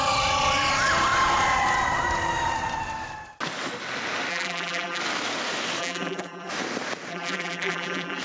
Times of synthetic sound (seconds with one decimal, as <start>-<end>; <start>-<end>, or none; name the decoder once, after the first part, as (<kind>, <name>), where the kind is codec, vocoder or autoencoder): 4.3-5.0 (vocoder, BigVGAN v2); 5.8-6.5; 7.1-8.2